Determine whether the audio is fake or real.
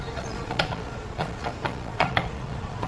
fake